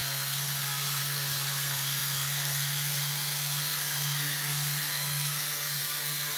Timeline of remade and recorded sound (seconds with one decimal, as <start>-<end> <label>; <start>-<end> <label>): 0.0-6.4 remade

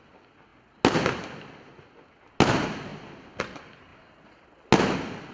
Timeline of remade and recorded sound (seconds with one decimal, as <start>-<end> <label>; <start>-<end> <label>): 0.0-5.3 recorded